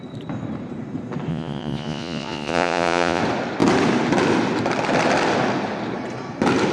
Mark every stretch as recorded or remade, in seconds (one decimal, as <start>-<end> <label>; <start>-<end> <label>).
0.0-1.3 recorded; 1.3-3.2 remade; 3.2-6.7 recorded